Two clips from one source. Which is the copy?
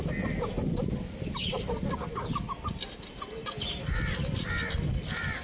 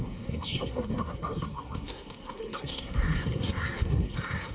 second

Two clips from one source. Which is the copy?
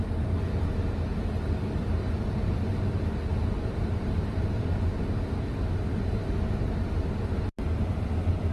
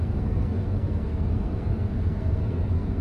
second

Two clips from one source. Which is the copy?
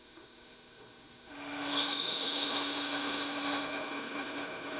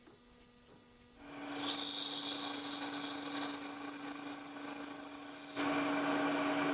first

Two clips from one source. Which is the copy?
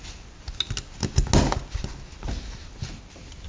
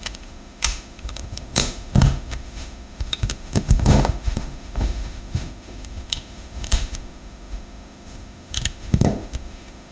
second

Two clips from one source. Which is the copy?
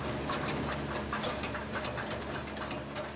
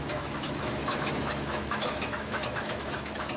second